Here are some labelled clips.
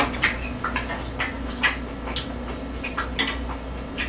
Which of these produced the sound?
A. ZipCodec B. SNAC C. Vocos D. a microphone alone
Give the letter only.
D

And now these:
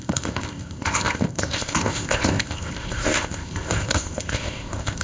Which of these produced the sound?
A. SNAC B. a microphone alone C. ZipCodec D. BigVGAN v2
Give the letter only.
C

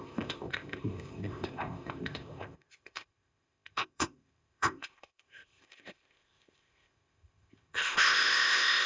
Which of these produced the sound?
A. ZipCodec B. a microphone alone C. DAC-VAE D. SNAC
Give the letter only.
A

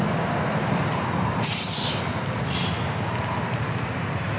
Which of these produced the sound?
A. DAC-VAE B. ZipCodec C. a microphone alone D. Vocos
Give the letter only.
C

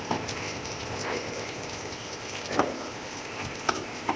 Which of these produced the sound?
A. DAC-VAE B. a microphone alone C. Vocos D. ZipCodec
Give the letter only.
D